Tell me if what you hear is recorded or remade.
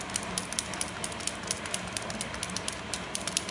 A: recorded